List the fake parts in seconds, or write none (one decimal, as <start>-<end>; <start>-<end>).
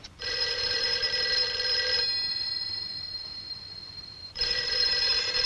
0.0-1.0; 2.3-4.9